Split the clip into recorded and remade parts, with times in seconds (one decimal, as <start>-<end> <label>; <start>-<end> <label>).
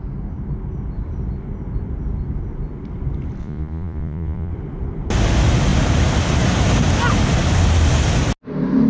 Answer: 0.0-3.4 recorded; 3.4-4.5 remade; 4.5-8.9 recorded